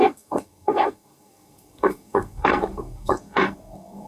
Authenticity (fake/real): fake